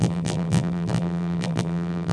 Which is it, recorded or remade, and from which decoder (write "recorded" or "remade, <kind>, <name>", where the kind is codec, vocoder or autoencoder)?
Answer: remade, vocoder, BigVGAN v2